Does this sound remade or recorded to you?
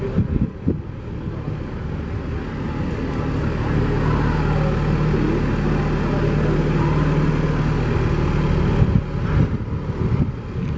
recorded